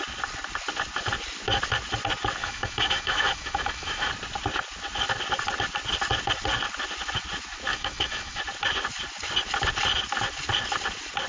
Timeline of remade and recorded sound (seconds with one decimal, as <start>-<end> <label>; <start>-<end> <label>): 0.0-2.4 recorded; 2.4-4.1 remade; 4.1-7.7 recorded; 7.7-8.4 remade; 8.4-11.3 recorded